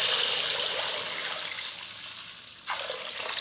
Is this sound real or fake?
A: real